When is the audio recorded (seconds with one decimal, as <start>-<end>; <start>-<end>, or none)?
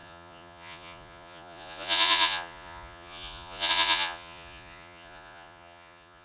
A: none